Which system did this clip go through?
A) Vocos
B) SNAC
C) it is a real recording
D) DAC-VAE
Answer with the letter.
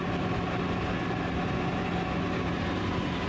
C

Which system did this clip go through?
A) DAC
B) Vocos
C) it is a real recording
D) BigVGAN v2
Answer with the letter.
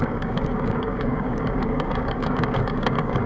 A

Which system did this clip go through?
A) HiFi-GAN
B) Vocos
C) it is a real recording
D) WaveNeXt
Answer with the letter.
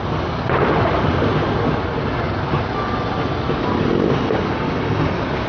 C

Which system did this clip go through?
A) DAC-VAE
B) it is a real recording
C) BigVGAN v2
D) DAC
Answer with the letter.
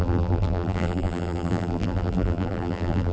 C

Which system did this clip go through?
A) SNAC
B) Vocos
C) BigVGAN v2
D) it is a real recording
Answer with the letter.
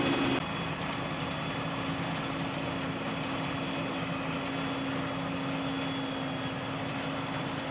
D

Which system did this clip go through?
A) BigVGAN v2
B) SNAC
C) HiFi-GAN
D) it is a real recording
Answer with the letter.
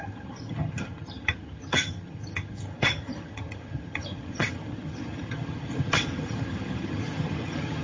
C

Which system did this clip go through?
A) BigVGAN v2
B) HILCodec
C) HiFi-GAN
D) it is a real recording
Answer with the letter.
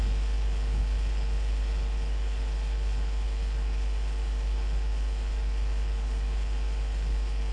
B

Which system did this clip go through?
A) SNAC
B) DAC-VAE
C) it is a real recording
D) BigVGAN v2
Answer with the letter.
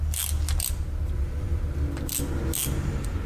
C